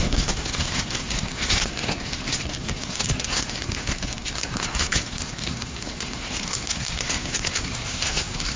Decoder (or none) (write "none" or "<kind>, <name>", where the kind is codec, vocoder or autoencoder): codec, SNAC